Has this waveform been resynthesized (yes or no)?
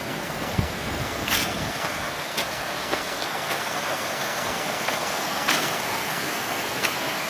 yes